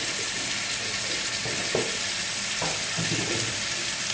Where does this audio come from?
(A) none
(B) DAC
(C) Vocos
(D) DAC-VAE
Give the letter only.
A